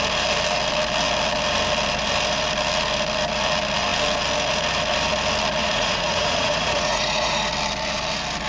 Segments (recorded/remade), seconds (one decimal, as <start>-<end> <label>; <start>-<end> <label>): 0.0-5.6 recorded; 5.6-7.5 remade; 7.5-8.5 recorded